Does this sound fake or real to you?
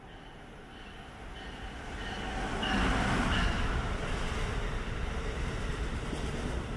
real